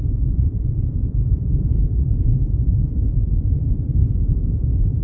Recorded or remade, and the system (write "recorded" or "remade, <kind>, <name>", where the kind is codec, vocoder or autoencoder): remade, vocoder, Vocos